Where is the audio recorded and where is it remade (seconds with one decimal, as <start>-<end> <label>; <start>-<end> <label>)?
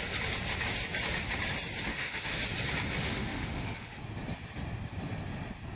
0.0-1.9 recorded; 1.9-2.4 remade; 2.4-3.0 recorded; 3.0-4.0 remade; 4.0-5.8 recorded